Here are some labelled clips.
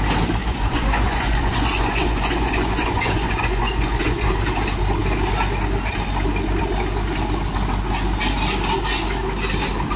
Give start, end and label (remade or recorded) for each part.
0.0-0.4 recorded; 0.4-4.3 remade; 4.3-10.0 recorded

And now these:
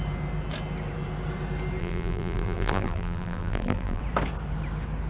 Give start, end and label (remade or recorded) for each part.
0.0-1.8 recorded; 1.8-4.0 remade; 4.0-5.1 recorded